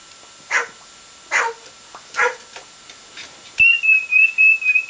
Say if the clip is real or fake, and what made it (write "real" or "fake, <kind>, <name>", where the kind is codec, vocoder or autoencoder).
real